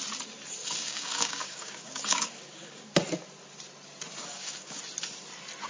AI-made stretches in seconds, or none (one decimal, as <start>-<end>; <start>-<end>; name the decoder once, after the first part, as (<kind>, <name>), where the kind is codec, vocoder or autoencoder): 0.6-2.9 (codec, DAC); 4.2-4.8